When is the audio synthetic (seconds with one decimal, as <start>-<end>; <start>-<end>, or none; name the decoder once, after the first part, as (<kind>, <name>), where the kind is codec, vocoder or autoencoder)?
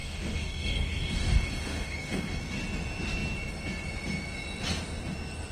0.0-2.4 (codec, DAC)